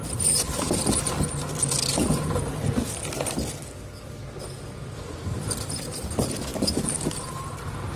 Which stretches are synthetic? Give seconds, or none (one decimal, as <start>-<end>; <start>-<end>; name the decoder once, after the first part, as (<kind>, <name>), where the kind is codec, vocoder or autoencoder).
3.6-4.2 (codec, DAC); 6.5-7.1